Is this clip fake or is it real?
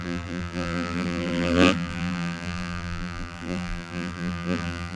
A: fake